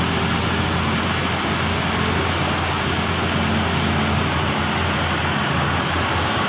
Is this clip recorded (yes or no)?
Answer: yes